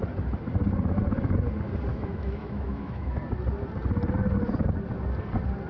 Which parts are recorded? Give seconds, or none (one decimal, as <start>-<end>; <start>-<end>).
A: 0.0-1.9; 3.2-5.7